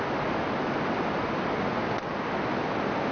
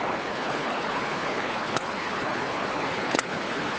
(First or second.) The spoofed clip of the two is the second